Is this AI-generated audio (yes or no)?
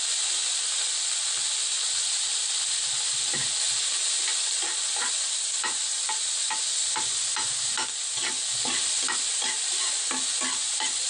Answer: no